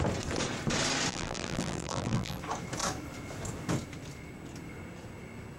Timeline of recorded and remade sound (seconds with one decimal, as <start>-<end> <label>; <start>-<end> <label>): 0.0-1.1 recorded; 1.1-2.4 remade; 2.4-5.6 recorded

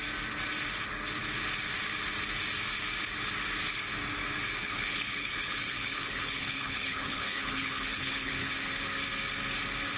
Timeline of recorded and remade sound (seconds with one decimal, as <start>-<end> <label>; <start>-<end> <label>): 0.0-4.6 recorded; 4.6-8.5 remade; 8.5-10.0 recorded

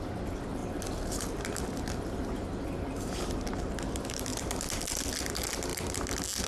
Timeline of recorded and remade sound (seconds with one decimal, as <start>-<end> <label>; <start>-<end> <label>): 0.0-6.5 recorded